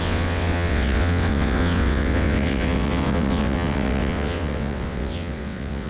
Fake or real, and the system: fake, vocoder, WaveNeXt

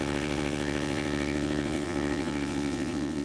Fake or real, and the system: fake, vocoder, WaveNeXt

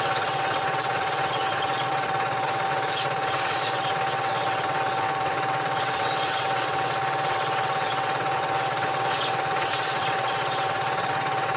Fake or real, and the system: fake, vocoder, WaveNeXt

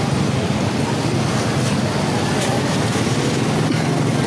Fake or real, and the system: real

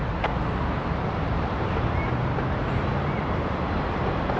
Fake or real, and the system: real